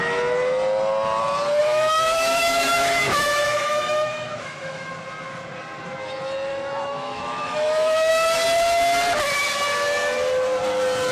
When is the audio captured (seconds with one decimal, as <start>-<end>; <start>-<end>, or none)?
0.0-1.6; 4.9-6.5; 8.1-11.1